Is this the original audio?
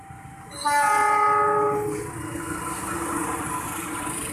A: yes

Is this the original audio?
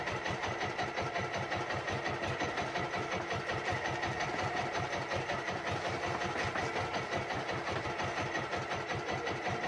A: yes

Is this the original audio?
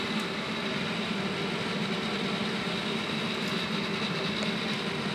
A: yes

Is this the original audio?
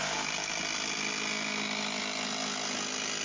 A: yes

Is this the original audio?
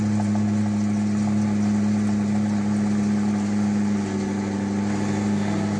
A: yes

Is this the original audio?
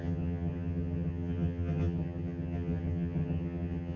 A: no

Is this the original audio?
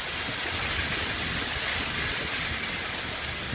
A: yes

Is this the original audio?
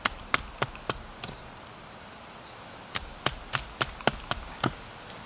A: yes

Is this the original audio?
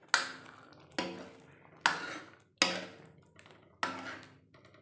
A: yes